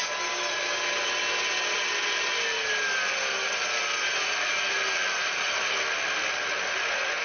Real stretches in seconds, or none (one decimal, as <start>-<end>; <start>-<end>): 0.0-7.2